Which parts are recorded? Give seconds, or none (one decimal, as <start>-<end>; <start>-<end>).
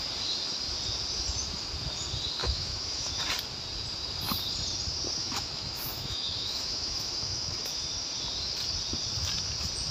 0.0-2.4; 3.1-5.2; 7.9-9.9